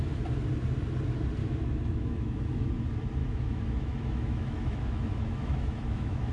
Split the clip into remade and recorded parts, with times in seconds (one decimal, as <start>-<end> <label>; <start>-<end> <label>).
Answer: 0.0-1.4 recorded; 1.4-2.7 remade; 2.7-3.2 recorded; 3.2-6.3 remade